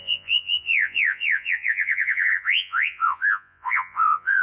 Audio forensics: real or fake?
fake